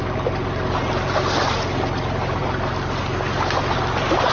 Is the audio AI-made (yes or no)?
no